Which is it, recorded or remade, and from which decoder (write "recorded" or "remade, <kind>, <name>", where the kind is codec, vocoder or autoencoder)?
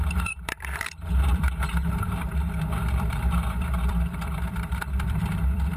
remade, vocoder, BigVGAN v2